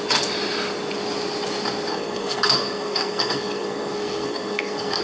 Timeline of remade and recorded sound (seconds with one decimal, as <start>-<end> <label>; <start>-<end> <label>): 0.0-1.9 recorded; 1.9-5.0 remade

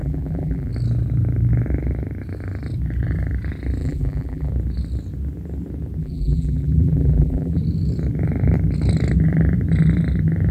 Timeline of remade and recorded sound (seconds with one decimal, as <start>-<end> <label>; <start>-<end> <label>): 0.0-0.7 remade; 0.7-3.8 recorded; 3.8-4.5 remade; 4.5-6.0 recorded; 6.0-7.6 remade; 7.6-10.5 recorded

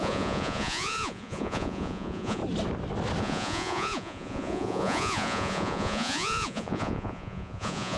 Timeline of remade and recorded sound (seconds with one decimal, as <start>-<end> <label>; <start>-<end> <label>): 0.0-2.4 remade; 2.4-3.2 recorded; 3.2-8.0 remade

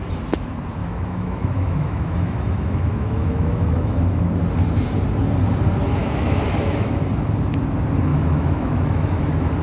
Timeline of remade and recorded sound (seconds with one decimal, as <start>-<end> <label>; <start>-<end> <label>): 0.0-0.8 recorded; 0.8-4.2 remade; 4.2-6.0 recorded; 6.0-7.0 remade; 7.0-8.1 recorded; 8.1-9.2 remade; 9.2-9.6 recorded

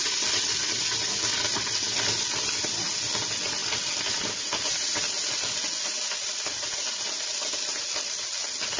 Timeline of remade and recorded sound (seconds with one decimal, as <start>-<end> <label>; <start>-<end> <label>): 0.0-3.6 recorded; 3.6-4.3 remade; 4.3-8.8 recorded

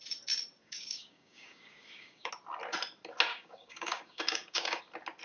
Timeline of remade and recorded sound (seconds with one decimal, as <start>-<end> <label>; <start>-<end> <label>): 0.0-0.6 recorded; 0.6-2.3 remade; 2.3-3.3 recorded; 3.3-4.8 remade; 4.8-5.2 recorded

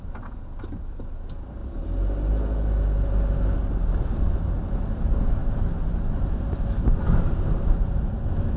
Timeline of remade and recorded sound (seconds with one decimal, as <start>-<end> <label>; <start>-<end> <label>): 0.0-8.6 recorded

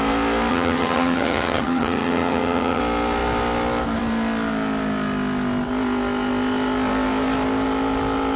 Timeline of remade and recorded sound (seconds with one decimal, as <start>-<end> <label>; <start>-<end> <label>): 0.0-0.5 recorded; 0.5-2.8 remade; 2.8-8.4 recorded